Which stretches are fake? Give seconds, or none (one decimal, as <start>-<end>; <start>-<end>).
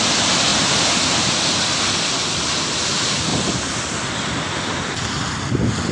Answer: 0.5-1.3; 3.3-4.1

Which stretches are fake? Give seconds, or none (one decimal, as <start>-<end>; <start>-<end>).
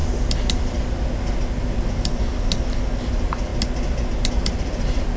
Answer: 3.1-3.5; 4.3-5.2